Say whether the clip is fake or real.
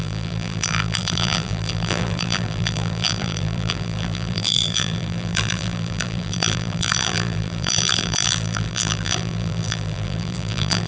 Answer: fake